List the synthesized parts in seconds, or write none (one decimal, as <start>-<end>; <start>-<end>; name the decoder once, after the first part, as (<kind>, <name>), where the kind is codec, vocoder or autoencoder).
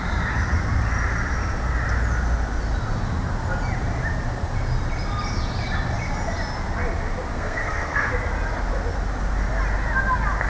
7.3-8.1 (codec, SNAC)